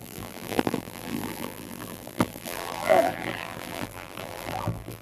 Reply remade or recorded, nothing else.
remade